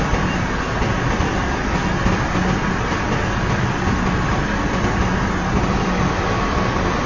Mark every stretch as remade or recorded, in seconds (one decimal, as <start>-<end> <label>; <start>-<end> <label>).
0.0-7.1 recorded